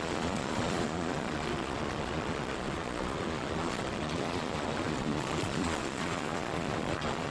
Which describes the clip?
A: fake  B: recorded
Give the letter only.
A